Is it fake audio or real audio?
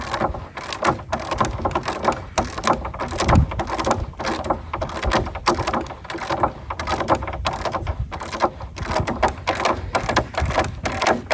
real